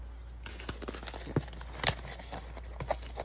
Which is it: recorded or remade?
recorded